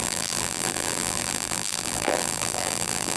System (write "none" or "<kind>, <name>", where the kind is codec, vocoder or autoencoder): vocoder, BigVGAN v2